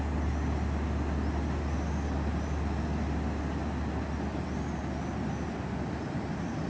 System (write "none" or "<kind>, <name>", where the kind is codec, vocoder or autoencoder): none